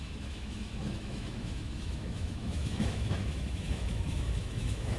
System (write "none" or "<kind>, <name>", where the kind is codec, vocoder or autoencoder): autoencoder, DAC-VAE